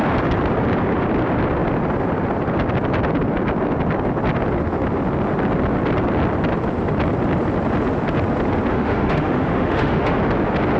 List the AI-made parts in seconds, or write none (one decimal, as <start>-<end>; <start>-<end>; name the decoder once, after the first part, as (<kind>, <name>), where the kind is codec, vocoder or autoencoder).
8.7-10.2 (autoencoder, DAC-VAE)